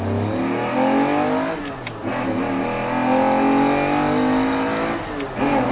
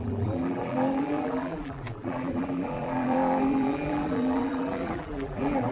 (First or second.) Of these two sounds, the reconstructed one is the second